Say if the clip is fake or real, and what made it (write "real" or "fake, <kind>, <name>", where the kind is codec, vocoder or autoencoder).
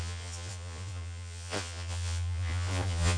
fake, vocoder, Vocos